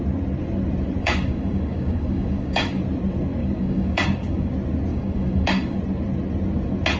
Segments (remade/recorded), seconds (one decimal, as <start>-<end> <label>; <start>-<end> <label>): 0.0-1.0 recorded; 1.0-2.8 remade; 2.8-3.4 recorded; 3.4-4.5 remade; 4.5-4.9 recorded; 4.9-5.8 remade; 5.8-7.0 recorded